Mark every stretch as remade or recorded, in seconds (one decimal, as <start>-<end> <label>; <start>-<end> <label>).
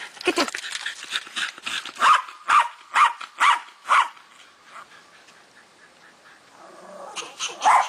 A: 0.0-7.9 recorded